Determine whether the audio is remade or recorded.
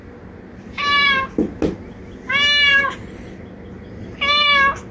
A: recorded